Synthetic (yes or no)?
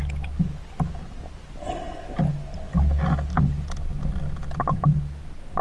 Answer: no